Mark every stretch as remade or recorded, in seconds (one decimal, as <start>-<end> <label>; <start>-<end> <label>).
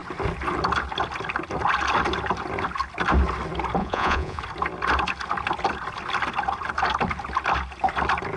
0.0-3.8 recorded; 3.8-4.4 remade; 4.4-8.4 recorded